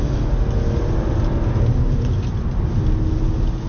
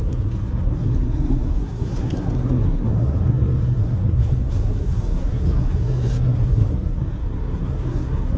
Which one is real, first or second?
first